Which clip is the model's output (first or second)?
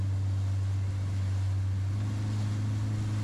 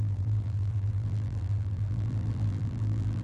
second